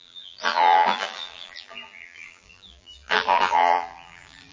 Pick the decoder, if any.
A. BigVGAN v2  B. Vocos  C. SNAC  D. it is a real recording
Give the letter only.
A